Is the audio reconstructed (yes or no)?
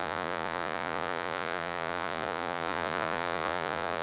yes